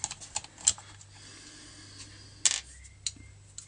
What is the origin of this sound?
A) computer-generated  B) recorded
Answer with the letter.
B